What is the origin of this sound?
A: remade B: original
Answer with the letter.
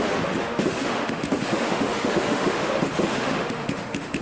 A